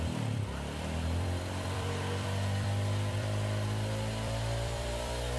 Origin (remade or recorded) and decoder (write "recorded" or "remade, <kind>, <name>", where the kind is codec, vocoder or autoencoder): remade, vocoder, BigVGAN v2